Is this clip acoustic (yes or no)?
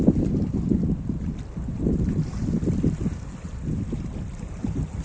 yes